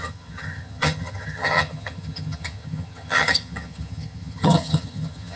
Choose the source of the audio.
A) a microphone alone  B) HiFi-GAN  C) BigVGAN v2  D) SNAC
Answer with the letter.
B